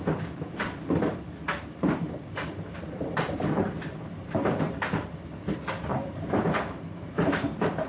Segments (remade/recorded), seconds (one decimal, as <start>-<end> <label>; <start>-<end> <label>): 0.0-1.8 recorded; 1.8-4.7 remade; 4.7-5.9 recorded; 5.9-7.9 remade